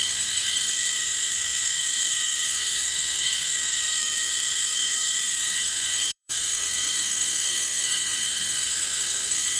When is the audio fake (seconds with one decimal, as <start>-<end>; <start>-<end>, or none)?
0.0-9.6

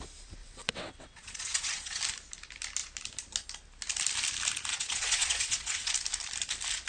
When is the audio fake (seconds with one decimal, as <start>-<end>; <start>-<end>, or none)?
0.4-2.0; 4.7-5.9

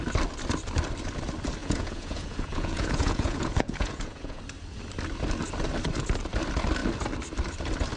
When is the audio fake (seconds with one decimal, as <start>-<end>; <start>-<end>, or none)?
1.6-4.4

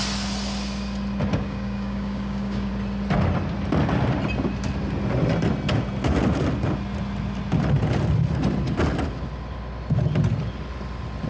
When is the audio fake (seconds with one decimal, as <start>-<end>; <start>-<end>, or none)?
1.3-2.7

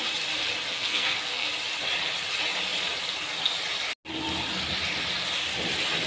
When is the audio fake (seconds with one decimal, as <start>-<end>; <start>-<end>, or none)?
0.7-1.5

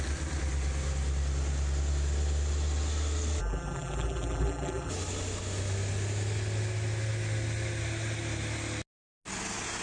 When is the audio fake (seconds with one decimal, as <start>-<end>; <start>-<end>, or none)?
3.4-4.9

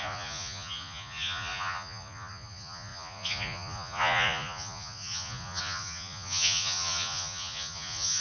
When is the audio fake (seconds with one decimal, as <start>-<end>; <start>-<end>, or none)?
0.0-8.2